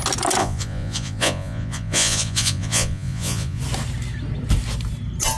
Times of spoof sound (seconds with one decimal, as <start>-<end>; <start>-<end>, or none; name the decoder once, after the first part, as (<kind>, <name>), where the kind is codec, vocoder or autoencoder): 0.4-3.6 (vocoder, Vocos)